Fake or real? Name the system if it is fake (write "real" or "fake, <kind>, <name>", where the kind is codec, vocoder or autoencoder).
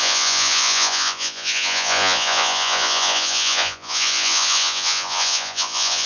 fake, vocoder, Vocos